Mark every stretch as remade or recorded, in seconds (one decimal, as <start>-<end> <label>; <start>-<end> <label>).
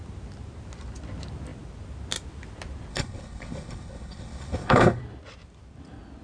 0.0-2.9 recorded; 2.9-5.0 remade; 5.0-6.2 recorded